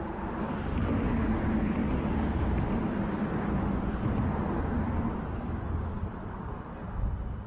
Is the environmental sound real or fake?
real